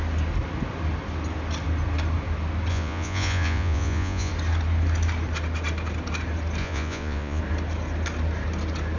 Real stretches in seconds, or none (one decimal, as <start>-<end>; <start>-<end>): 0.0-2.7; 4.3-6.6; 7.4-9.0